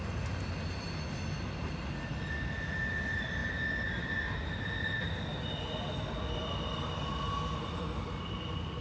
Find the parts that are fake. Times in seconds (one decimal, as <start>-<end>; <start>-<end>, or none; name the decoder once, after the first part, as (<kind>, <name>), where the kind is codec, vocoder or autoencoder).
none